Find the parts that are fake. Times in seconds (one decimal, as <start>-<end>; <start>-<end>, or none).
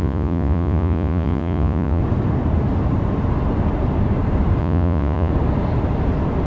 0.0-2.0; 4.6-5.3